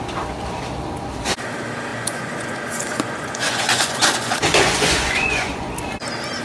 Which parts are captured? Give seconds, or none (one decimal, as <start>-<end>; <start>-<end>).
0.0-1.9; 5.7-6.4